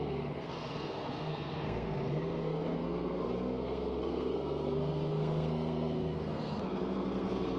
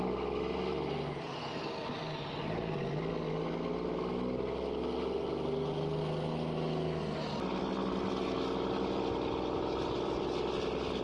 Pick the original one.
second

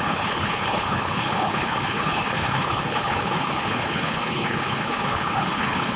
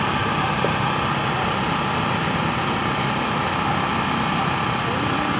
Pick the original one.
second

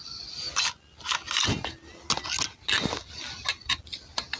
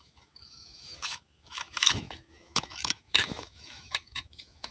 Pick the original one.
first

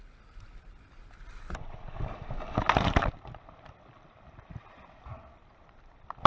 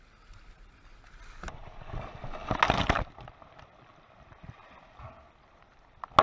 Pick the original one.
second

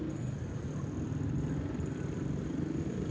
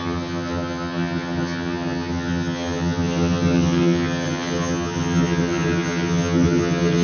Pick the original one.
first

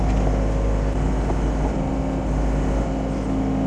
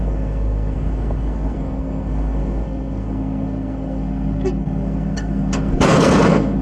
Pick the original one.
first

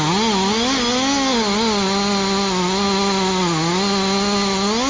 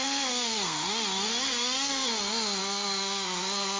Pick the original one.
first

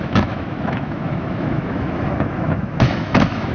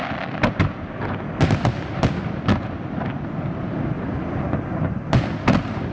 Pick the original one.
second